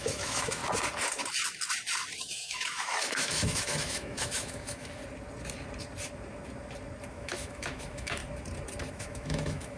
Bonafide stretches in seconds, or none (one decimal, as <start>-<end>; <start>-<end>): 0.6-2.2; 5.0-7.1; 8.2-8.9